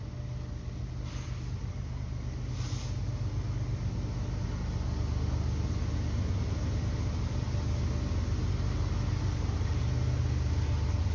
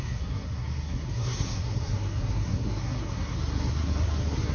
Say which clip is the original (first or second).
first